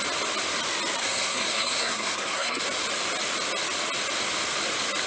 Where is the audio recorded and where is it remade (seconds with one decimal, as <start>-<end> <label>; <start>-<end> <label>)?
0.0-1.0 recorded; 1.0-2.6 remade; 2.6-5.1 recorded